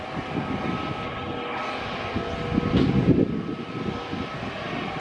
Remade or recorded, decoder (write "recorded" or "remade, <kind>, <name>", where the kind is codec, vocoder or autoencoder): recorded